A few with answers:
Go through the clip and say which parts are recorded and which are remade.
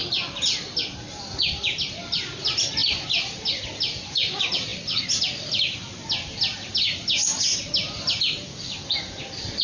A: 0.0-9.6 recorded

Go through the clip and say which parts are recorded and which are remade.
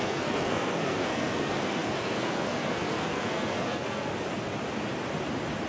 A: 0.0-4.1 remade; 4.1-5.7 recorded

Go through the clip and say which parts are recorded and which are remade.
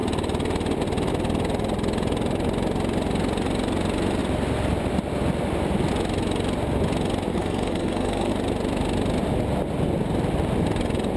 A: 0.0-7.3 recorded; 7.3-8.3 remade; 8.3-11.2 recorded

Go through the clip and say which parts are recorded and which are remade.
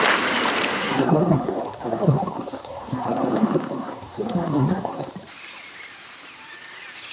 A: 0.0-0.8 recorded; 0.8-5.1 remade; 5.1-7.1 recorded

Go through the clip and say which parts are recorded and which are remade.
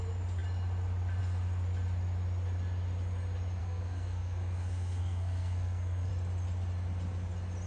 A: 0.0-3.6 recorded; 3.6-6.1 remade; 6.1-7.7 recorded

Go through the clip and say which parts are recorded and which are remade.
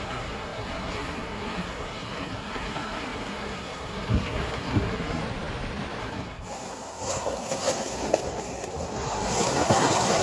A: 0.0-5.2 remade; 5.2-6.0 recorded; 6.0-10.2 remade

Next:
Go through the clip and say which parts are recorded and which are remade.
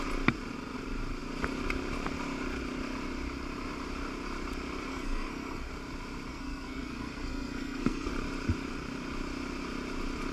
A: 0.0-4.9 recorded; 4.9-5.7 remade; 5.7-6.3 recorded; 6.3-8.1 remade; 8.1-10.3 recorded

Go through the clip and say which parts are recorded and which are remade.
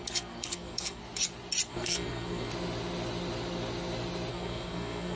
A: 0.0-1.0 remade; 1.0-1.7 recorded; 1.7-2.5 remade; 2.5-4.3 recorded; 4.3-5.2 remade